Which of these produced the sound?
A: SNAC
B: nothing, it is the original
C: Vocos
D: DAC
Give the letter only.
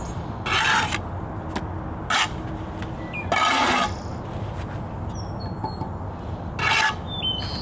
B